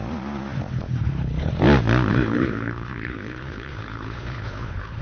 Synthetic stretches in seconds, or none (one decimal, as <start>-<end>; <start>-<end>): 0.7-1.5; 2.1-5.0